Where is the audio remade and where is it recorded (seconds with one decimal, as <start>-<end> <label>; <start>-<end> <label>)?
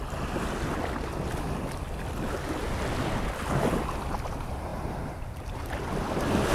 0.0-4.7 recorded; 4.7-5.7 remade; 5.7-6.5 recorded